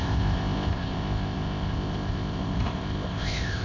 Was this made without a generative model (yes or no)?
no